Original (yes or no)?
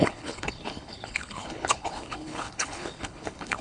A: no